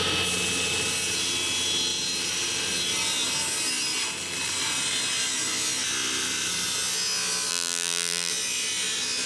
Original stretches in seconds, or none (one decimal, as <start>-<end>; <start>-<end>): 0.0-7.5; 8.3-9.3